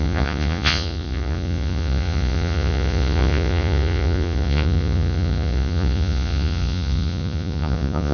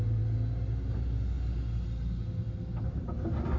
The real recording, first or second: second